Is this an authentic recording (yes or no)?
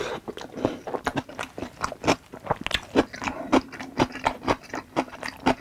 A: yes